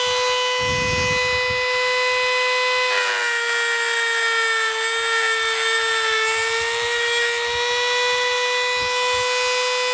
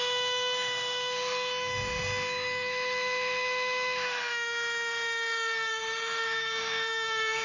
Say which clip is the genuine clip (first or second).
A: first